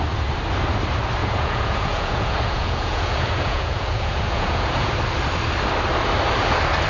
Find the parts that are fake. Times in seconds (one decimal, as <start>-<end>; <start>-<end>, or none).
1.2-4.9